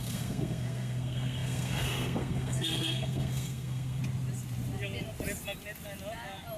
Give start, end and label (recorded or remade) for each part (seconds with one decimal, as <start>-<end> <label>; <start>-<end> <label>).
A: 0.0-4.0 remade; 4.0-6.6 recorded